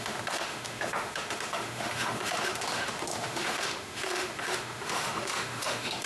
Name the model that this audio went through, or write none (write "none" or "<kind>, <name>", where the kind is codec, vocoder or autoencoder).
autoencoder, DAC-VAE